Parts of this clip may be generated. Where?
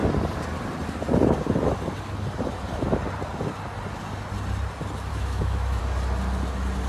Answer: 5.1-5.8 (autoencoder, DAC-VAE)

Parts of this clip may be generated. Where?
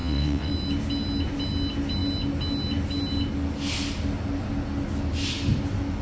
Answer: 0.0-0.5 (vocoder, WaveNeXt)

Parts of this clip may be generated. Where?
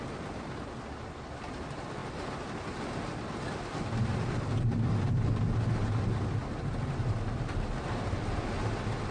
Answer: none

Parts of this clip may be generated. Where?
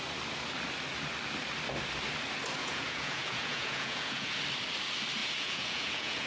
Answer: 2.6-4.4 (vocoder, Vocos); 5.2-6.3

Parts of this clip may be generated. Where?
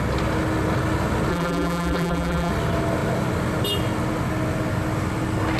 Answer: 1.3-2.5 (vocoder, BigVGAN v2)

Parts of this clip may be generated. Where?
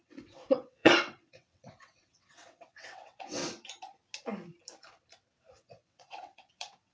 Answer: 0.0-3.4 (vocoder, WaveNeXt); 5.5-6.9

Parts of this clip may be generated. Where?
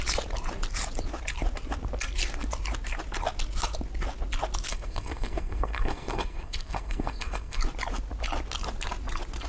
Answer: 4.7-7.6 (codec, SNAC)